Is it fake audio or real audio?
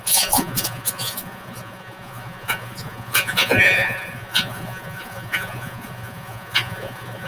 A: fake